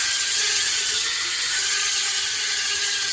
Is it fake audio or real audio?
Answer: fake